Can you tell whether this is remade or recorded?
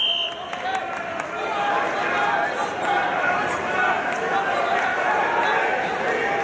recorded